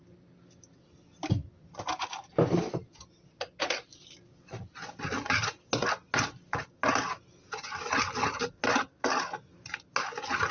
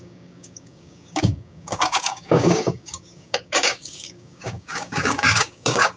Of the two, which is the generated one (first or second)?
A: second